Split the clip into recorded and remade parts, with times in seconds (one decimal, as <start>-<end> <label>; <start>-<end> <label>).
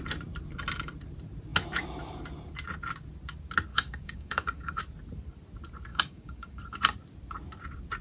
0.0-3.7 recorded; 3.7-4.8 remade; 4.8-5.9 recorded; 5.9-6.6 remade; 6.6-8.0 recorded